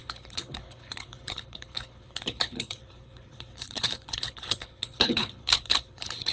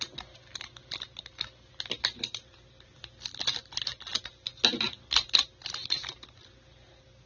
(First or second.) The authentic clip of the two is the second